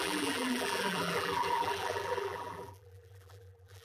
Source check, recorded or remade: remade